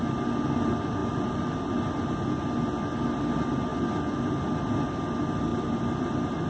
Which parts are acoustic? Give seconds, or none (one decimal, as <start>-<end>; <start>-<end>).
0.0-1.0; 1.7-5.5